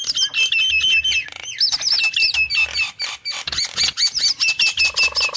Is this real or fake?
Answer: real